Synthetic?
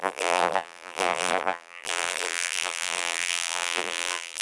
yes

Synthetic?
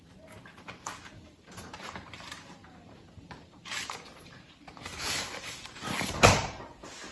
yes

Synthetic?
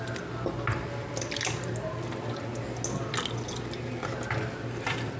no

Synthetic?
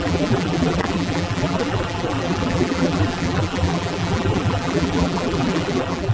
yes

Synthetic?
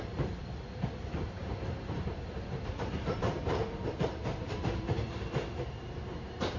yes